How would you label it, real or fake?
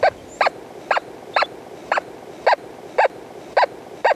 real